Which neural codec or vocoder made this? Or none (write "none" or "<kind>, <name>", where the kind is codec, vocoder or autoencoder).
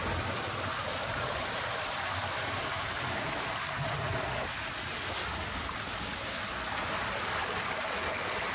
none